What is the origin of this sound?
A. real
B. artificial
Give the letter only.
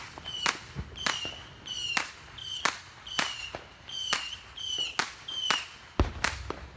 A